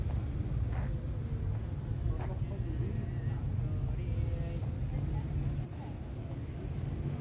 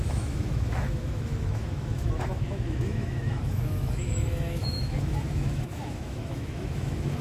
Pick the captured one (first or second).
first